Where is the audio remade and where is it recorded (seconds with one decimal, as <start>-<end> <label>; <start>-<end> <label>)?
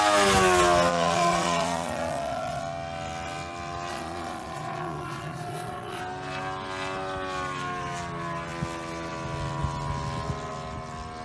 0.0-0.9 recorded; 0.9-2.6 remade; 2.6-3.9 recorded; 3.9-6.0 remade; 6.0-11.2 recorded